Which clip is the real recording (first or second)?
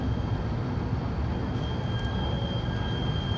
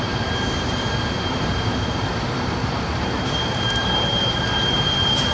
first